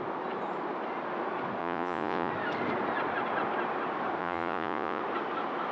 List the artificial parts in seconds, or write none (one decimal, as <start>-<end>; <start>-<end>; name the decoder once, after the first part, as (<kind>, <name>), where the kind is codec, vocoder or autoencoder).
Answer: 1.6-2.3 (vocoder, Vocos); 4.2-5.0